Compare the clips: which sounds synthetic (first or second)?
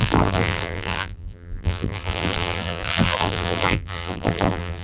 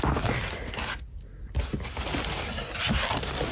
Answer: first